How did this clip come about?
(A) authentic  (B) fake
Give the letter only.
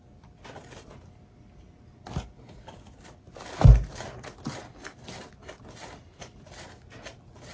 A